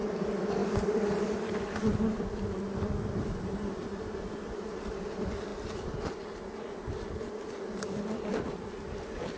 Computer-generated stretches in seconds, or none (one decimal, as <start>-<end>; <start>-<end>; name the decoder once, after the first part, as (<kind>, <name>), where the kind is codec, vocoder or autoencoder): 0.0-9.4 (vocoder, BigVGAN v2)